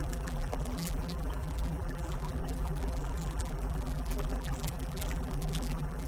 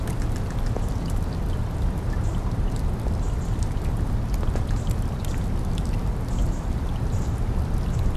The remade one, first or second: first